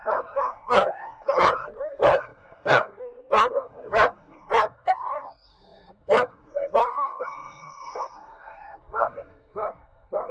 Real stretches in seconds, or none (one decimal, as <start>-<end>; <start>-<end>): none

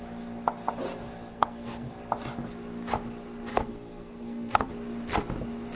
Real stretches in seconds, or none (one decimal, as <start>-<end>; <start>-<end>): 0.0-1.3; 1.9-3.5; 4.7-5.8

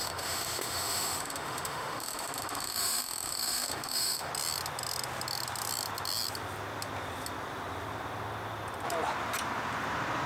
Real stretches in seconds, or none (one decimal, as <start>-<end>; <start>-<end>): 4.3-10.3